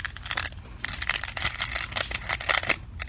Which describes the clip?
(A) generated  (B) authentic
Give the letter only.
B